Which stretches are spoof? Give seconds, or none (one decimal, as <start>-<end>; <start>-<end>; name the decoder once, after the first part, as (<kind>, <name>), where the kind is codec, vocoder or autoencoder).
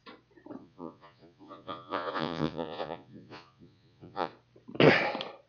0.6-4.3 (vocoder, Vocos)